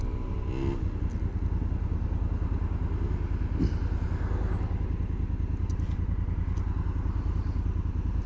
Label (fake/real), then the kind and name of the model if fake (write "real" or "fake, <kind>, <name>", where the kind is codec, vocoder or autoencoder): real